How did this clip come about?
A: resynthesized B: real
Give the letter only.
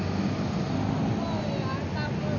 B